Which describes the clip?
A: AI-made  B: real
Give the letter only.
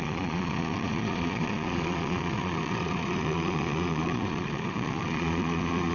A